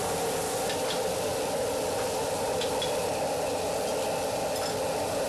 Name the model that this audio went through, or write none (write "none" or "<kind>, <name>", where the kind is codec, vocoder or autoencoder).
none